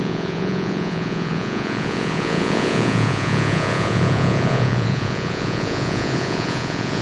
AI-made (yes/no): yes